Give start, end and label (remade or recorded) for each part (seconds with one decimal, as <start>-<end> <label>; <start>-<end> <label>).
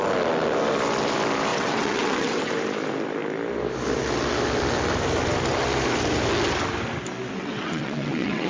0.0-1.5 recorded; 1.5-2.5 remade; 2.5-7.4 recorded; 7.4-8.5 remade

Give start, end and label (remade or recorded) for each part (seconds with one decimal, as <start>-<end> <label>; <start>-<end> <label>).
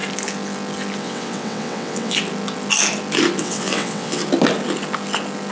0.0-1.0 recorded; 1.0-2.2 remade; 2.2-3.4 recorded; 3.4-4.2 remade; 4.2-5.5 recorded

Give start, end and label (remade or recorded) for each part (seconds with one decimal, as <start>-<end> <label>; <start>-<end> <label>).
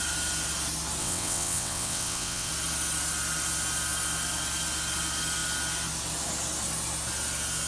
0.0-1.0 recorded; 1.0-2.5 remade; 2.5-7.7 recorded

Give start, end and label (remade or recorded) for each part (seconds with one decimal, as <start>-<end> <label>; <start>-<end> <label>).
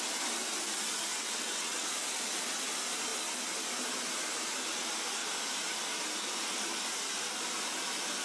0.0-1.1 recorded; 1.1-1.9 remade; 1.9-8.2 recorded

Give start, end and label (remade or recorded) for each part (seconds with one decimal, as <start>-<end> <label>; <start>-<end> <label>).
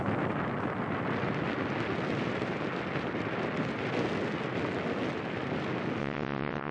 0.0-6.0 recorded; 6.0-6.7 remade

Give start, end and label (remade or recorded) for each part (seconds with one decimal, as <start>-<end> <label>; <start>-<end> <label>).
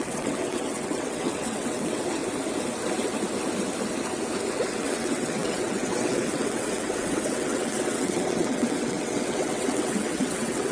0.0-2.2 remade; 2.2-4.5 recorded; 4.5-10.7 remade